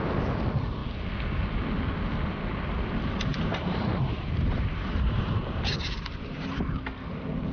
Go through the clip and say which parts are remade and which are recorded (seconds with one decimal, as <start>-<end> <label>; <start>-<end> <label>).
0.0-3.3 recorded; 3.3-6.6 remade; 6.6-7.5 recorded